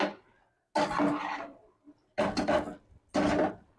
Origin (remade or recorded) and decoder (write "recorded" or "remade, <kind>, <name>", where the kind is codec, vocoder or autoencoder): recorded